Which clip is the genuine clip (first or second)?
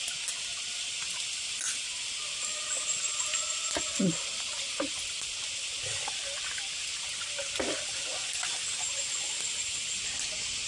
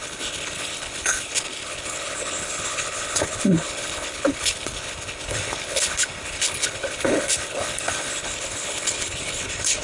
first